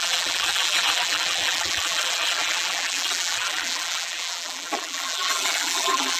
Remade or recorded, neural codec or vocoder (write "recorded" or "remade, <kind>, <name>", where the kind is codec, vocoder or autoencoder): remade, vocoder, BigVGAN v2